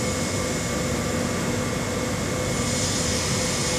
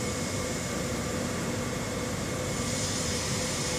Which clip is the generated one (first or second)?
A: second